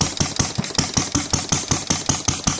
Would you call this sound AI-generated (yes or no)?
no